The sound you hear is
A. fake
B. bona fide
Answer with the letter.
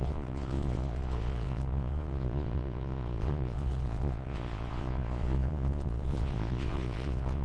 A